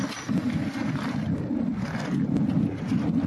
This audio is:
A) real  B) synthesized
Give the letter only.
A